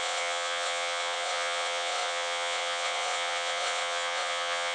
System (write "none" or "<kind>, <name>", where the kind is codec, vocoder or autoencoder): vocoder, WaveNeXt